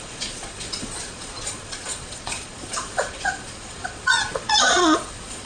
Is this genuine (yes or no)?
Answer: no